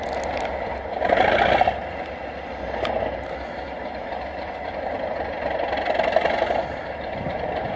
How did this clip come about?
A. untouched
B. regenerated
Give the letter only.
A